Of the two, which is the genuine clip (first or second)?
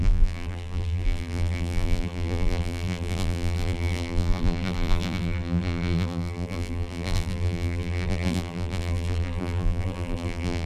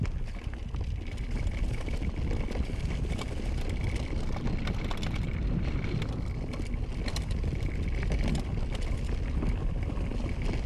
second